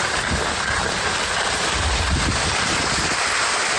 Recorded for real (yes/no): yes